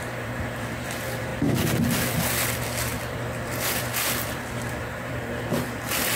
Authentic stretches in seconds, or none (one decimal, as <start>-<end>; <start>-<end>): 1.3-2.1